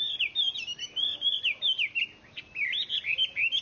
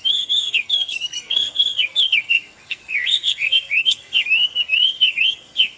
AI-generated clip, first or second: second